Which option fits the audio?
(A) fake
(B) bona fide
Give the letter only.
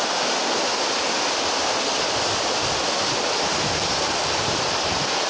B